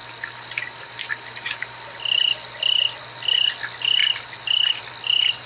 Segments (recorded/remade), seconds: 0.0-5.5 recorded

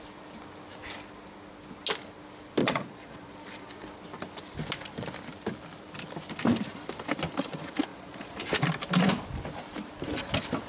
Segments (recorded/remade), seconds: 0.0-2.6 recorded; 2.6-3.7 remade; 3.7-7.9 recorded; 7.9-8.5 remade; 8.5-10.7 recorded

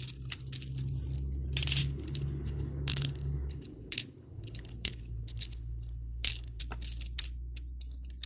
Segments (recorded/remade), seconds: 0.0-1.8 recorded; 1.8-6.6 remade; 6.6-8.3 recorded